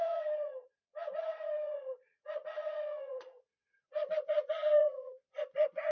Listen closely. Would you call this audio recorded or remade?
remade